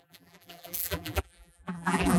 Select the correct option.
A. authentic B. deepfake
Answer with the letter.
B